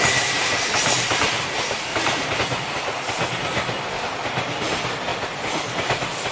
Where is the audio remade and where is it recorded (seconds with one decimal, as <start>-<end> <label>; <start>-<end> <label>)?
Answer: 0.0-1.9 recorded; 1.9-2.4 remade; 2.4-5.1 recorded; 5.1-6.3 remade